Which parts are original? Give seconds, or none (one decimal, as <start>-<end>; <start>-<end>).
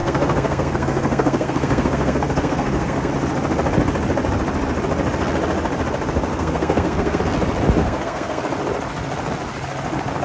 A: 3.1-6.3; 7.2-7.8; 8.4-10.2